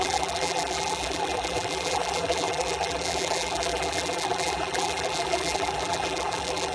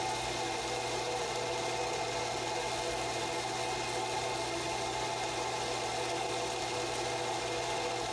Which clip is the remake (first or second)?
first